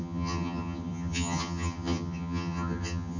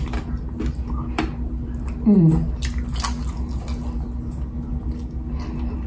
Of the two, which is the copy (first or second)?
first